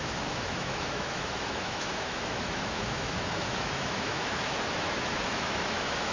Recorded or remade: remade